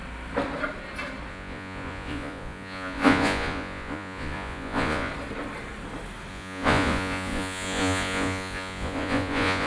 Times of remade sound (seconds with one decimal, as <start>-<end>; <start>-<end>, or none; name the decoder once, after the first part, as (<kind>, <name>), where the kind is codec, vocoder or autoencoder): 1.3-5.1 (vocoder, Vocos); 6.3-9.7